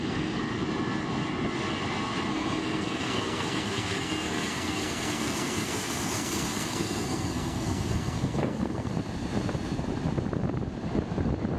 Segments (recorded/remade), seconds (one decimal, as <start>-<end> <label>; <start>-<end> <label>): 0.0-0.4 remade; 0.4-2.3 recorded; 2.3-8.9 remade; 8.9-11.6 recorded